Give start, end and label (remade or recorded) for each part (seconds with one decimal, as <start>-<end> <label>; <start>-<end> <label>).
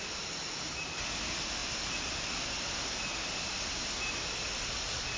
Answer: 0.0-5.2 recorded